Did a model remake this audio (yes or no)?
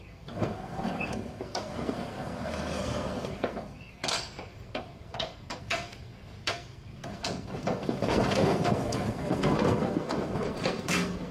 yes